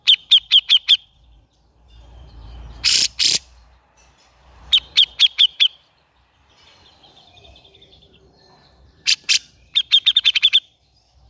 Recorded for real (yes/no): no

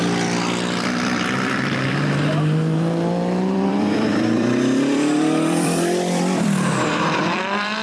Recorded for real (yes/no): no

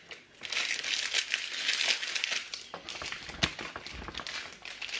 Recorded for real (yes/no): yes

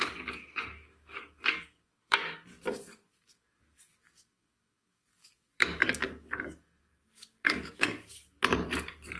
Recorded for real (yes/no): no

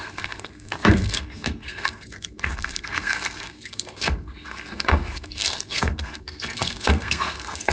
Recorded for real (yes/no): no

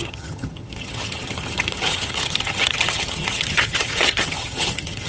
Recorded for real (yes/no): no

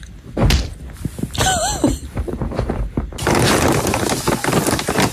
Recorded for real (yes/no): yes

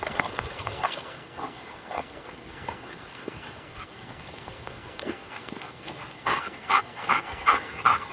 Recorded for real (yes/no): no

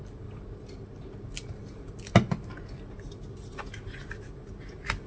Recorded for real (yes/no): yes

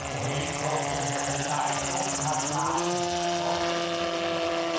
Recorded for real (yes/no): no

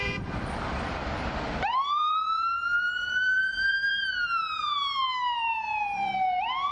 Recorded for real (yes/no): no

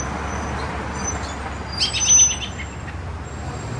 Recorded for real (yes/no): yes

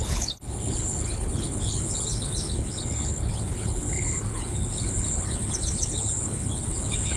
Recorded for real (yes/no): no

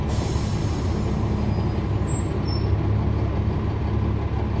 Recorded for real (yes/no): yes